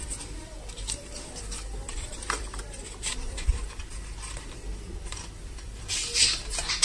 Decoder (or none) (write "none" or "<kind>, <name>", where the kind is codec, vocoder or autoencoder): vocoder, BigVGAN v2